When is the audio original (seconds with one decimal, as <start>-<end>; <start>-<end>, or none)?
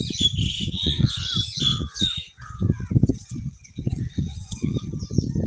0.0-0.5; 1.2-1.7; 5.0-5.5